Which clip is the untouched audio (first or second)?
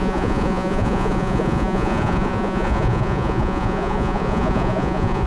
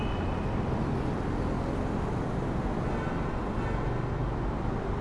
second